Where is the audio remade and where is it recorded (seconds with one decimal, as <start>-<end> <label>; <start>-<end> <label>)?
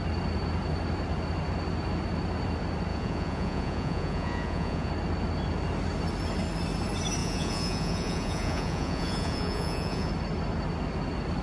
0.0-2.9 recorded; 2.9-4.9 remade; 4.9-7.2 recorded; 7.2-10.1 remade; 10.1-11.4 recorded